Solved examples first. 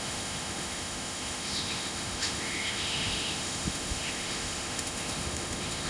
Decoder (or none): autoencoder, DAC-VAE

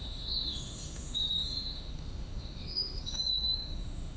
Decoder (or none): autoencoder, DAC-VAE